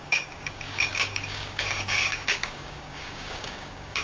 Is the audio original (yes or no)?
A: no